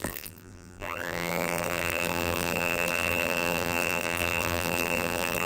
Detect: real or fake fake